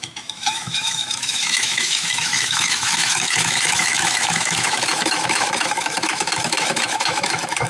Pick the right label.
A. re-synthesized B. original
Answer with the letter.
A